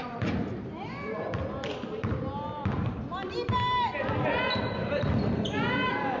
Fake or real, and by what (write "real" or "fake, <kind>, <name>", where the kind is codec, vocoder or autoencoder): real